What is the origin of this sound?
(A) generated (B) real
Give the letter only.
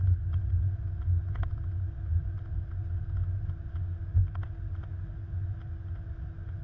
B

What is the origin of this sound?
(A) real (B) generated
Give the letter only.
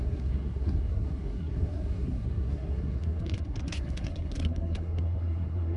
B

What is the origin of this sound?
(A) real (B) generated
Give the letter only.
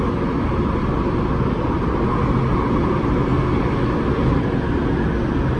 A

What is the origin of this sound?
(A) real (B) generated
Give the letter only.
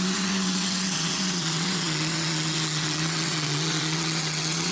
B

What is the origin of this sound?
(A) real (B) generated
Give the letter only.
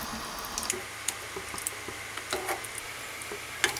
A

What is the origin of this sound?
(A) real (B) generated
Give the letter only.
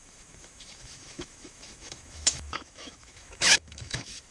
B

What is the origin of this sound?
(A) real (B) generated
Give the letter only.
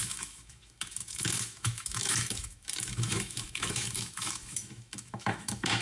B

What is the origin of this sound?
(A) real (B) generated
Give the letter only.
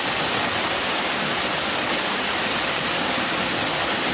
A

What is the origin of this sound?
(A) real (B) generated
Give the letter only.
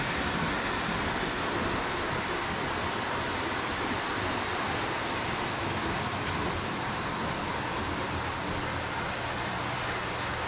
A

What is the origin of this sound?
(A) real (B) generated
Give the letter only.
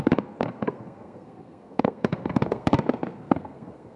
B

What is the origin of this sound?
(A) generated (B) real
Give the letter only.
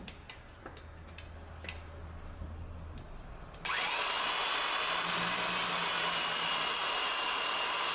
B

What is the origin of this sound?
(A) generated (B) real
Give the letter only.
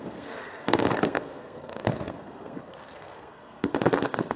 A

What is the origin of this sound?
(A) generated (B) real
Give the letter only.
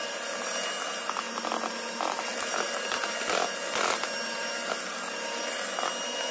B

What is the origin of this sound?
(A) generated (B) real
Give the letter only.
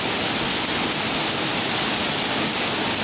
B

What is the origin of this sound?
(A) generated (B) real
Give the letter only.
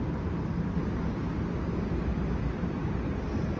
B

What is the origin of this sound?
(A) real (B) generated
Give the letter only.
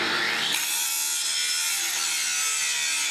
A